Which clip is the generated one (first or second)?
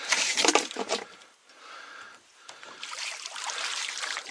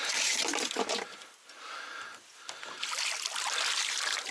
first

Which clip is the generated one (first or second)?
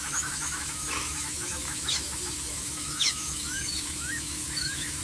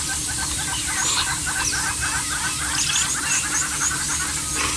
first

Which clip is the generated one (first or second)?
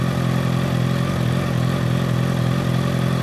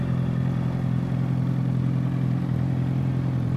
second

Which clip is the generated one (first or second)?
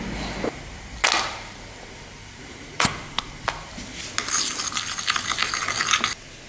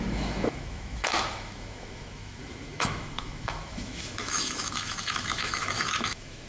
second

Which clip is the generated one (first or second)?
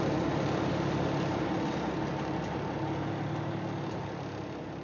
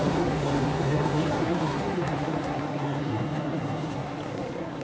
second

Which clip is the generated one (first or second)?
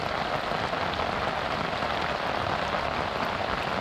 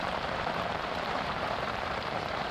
second